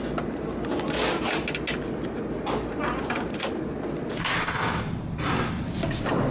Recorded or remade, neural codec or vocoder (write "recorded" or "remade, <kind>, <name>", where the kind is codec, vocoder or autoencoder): recorded